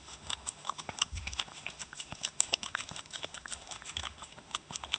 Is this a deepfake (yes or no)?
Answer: yes